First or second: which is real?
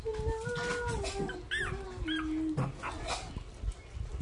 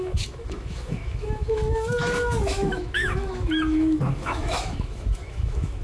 first